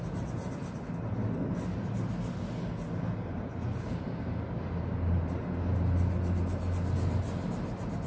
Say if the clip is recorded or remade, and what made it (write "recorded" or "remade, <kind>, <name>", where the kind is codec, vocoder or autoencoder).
recorded